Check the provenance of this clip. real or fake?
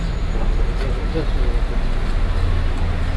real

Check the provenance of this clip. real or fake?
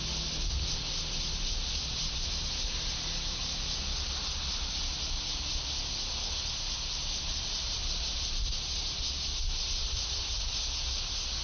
real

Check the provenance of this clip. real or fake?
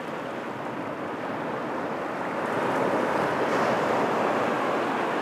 real